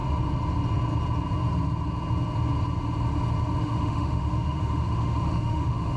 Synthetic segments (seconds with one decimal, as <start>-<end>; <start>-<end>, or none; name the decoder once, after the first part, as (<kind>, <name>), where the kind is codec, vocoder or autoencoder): 3.6-6.0 (autoencoder, DAC-VAE)